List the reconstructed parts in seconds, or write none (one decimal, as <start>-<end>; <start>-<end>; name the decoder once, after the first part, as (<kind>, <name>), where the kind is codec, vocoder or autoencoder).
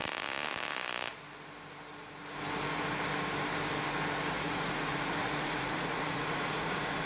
4.3-7.1 (vocoder, Vocos)